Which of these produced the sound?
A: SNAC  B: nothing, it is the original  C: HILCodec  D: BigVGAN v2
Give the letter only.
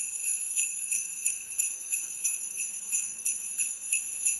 A